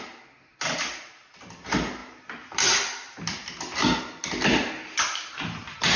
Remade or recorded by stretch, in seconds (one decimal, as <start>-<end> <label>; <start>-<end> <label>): 0.0-6.0 recorded